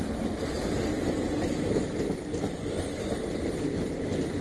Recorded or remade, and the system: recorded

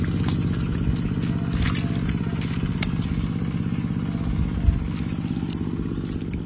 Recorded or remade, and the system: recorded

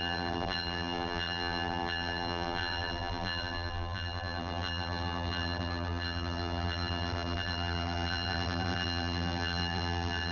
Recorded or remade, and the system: remade, vocoder, BigVGAN v2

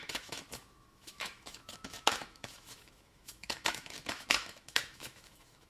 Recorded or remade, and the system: remade, autoencoder, DAC-VAE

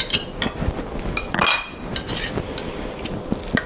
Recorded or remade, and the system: recorded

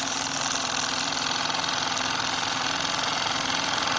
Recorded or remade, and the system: recorded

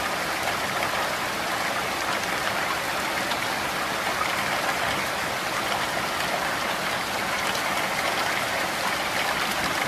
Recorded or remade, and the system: recorded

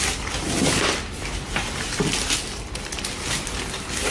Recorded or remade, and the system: recorded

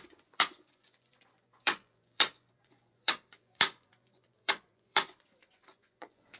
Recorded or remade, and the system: remade, vocoder, Vocos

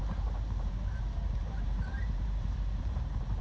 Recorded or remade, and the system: remade, vocoder, BigVGAN v2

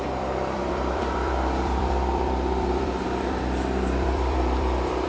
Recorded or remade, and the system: remade, vocoder, BigVGAN v2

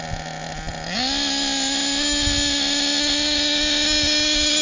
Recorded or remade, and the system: recorded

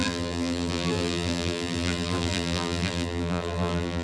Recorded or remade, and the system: remade, vocoder, BigVGAN v2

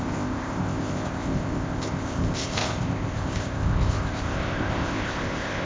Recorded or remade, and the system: remade, codec, ZipCodec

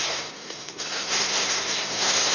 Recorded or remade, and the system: remade, codec, SNAC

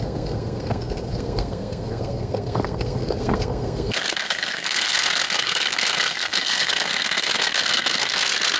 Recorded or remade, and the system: remade, codec, SNAC